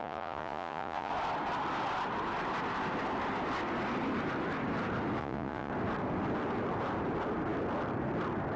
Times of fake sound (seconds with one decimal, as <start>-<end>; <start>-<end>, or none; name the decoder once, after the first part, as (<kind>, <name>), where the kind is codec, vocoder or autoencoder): 0.0-1.1 (vocoder, Vocos); 5.2-5.7